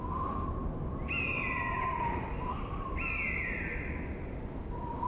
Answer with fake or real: real